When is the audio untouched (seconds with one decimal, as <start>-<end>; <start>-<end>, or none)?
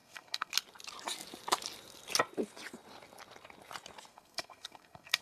0.5-4.1